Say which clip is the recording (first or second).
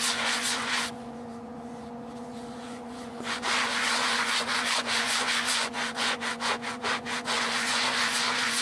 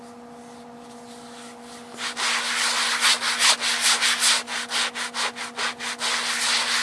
second